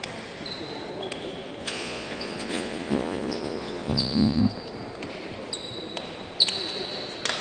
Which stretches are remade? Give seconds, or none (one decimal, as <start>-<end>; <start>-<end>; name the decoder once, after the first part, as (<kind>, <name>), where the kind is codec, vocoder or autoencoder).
1.6-4.4 (vocoder, Vocos)